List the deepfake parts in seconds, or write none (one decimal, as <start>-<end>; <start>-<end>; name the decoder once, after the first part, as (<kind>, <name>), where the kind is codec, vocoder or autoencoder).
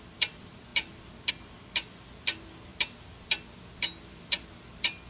0.0-0.7 (vocoder, BigVGAN v2); 1.3-2.7; 4.2-5.1